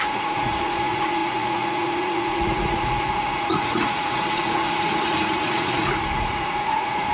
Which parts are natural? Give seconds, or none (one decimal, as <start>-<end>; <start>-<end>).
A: none